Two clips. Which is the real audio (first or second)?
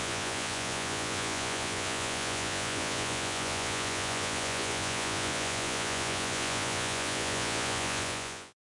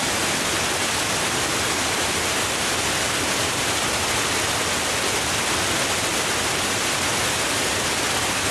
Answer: second